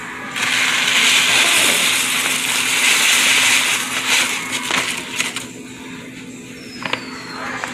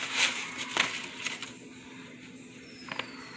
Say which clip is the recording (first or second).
first